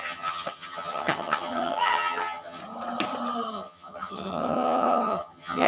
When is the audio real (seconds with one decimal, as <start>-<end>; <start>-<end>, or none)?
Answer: 2.6-3.5